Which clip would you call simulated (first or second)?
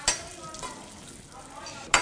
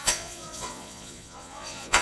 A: second